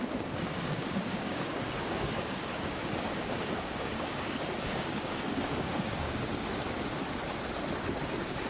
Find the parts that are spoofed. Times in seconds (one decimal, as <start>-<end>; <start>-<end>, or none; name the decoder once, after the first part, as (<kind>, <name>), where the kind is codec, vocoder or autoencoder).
0.0-6.3 (codec, DAC); 7.9-8.5